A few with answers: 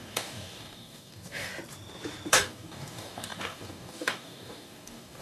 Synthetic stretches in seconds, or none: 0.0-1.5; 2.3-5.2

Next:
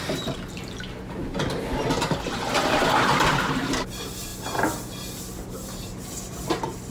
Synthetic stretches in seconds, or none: none